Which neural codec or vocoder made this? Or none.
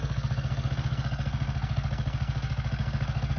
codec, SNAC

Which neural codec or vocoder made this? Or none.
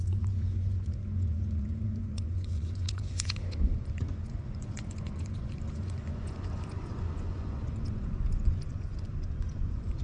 vocoder, Vocos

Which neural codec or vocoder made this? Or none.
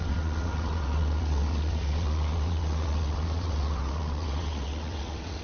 vocoder, WaveNeXt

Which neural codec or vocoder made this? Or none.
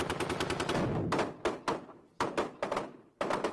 none